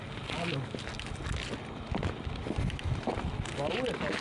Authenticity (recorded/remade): recorded